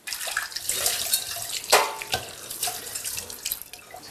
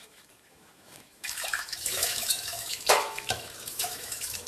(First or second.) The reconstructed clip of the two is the second